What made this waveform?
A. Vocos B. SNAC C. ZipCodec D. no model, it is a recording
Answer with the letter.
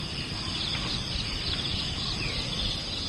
D